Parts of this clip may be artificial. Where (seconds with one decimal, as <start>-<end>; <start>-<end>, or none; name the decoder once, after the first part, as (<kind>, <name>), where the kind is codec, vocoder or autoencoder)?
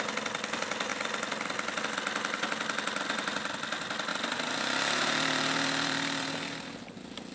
4.1-6.3 (vocoder, BigVGAN v2)